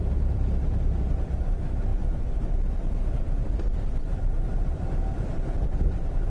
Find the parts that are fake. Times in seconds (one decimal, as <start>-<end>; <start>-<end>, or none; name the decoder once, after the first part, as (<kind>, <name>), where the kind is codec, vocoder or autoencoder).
none